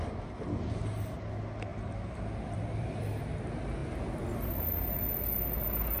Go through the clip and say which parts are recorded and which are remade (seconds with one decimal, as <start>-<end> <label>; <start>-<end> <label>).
0.0-1.7 recorded; 1.7-3.2 remade; 3.2-6.0 recorded